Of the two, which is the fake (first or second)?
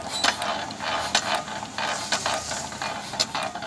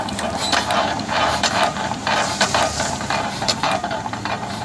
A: second